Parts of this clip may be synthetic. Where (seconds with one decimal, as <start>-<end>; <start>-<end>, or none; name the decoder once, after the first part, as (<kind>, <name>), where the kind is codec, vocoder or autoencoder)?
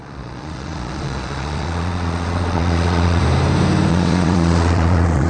0.0-3.2 (vocoder, Vocos); 3.9-5.3